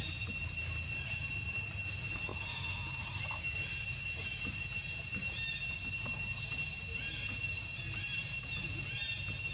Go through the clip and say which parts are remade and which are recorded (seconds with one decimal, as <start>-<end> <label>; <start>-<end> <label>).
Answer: 0.0-9.5 recorded